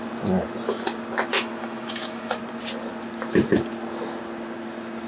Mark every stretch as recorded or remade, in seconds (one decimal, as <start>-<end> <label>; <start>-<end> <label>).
0.0-1.3 recorded; 1.3-2.4 remade; 2.4-5.1 recorded